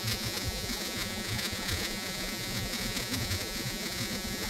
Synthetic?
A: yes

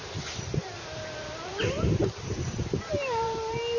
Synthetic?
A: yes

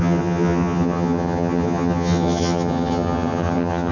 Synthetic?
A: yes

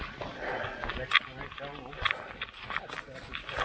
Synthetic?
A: no